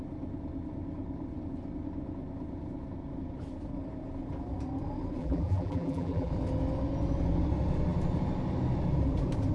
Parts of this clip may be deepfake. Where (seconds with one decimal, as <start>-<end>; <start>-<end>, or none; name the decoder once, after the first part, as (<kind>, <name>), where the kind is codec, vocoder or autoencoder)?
5.2-6.3 (vocoder, BigVGAN v2)